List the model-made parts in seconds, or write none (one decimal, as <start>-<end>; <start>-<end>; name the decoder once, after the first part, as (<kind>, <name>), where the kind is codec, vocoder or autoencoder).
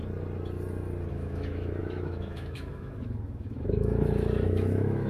1.1-5.1 (autoencoder, DAC-VAE)